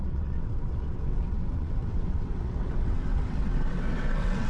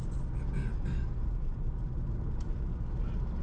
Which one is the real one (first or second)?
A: second